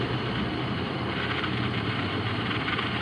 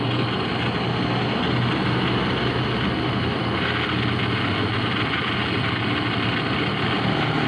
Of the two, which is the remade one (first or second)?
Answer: first